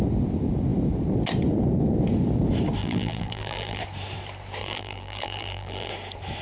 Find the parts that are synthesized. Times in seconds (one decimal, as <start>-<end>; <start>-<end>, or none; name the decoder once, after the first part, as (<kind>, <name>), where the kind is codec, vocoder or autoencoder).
2.8-3.8 (vocoder, BigVGAN v2); 4.6-5.9